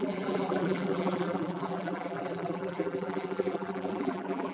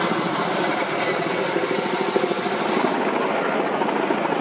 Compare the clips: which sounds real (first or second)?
second